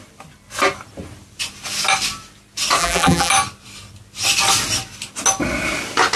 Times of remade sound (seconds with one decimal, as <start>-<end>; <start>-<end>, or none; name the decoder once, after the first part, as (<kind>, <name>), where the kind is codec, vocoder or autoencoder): 2.8-3.3 (vocoder, BigVGAN v2)